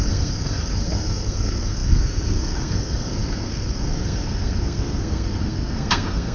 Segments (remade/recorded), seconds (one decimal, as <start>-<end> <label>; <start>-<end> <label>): 0.0-6.3 remade